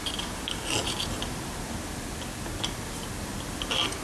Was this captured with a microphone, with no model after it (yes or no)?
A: yes